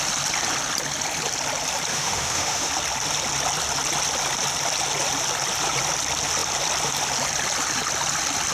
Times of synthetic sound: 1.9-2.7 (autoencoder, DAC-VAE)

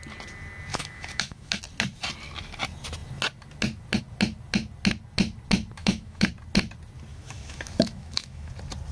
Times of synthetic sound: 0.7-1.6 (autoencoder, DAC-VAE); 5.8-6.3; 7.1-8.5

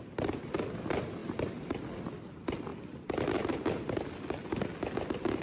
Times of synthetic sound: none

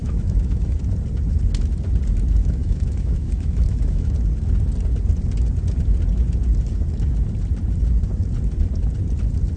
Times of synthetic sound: 0.0-0.8 (autoencoder, DAC-VAE); 2.4-4.1